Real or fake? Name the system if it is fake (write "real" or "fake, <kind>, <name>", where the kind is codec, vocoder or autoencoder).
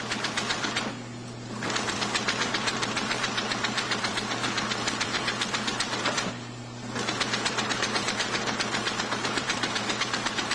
fake, vocoder, BigVGAN v2